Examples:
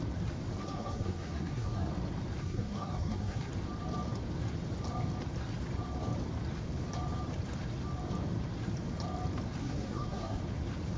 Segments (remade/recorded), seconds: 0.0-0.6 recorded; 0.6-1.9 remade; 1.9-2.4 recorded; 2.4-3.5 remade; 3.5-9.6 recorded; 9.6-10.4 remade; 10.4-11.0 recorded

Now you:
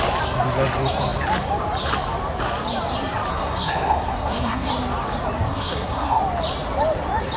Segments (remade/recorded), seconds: 0.0-3.3 recorded; 3.3-4.7 remade; 4.7-5.5 recorded; 5.5-6.2 remade; 6.2-7.4 recorded

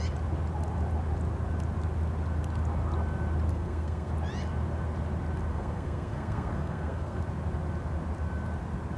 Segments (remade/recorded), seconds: 0.0-3.5 recorded; 3.5-4.1 remade; 4.1-5.5 recorded; 5.5-7.2 remade; 7.2-9.0 recorded